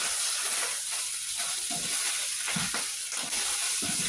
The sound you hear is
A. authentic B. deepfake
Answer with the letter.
A